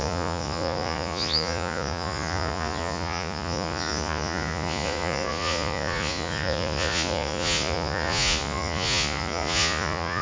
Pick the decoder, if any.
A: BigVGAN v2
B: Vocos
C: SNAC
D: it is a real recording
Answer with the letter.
B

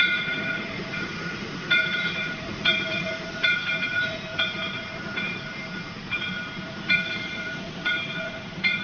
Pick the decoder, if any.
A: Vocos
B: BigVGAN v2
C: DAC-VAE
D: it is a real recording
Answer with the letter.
A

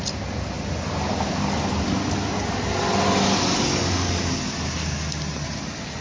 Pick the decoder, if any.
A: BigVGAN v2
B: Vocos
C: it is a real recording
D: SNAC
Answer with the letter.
C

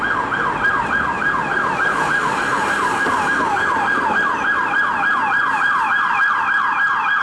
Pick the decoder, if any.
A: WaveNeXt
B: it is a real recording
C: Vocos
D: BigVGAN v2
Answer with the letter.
B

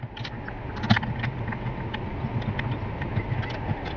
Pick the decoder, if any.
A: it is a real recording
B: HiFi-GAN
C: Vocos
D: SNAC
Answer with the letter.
A